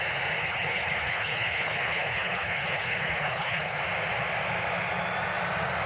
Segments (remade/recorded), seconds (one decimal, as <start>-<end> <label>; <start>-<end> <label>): 0.0-0.4 recorded; 0.4-3.8 remade; 3.8-5.9 recorded